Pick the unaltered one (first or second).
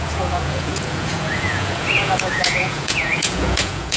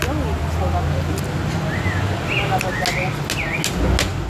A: second